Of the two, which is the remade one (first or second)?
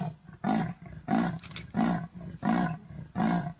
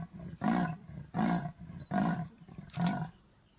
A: second